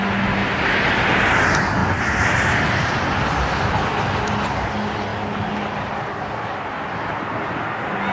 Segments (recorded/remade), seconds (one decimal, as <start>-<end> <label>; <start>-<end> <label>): 0.0-0.4 recorded; 0.4-1.2 remade; 1.2-5.1 recorded; 5.1-5.9 remade; 5.9-8.1 recorded